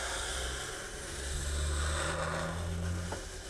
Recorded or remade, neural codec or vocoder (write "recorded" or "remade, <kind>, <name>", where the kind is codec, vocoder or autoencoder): recorded